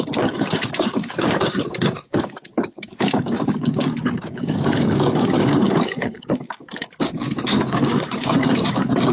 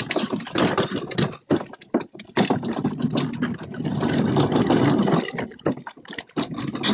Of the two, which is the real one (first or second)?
second